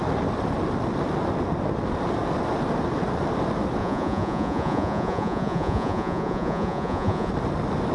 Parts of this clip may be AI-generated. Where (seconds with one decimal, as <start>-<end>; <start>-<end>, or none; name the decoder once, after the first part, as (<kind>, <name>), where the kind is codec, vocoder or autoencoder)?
3.8-7.3 (vocoder, Vocos)